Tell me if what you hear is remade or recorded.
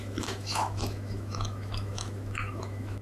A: remade